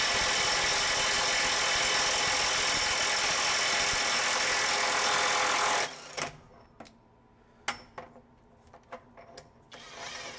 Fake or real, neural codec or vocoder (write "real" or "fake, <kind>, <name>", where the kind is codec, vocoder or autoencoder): real